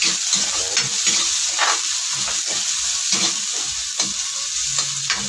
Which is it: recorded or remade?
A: recorded